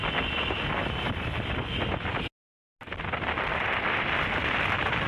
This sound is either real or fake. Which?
real